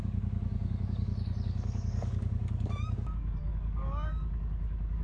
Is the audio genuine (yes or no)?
no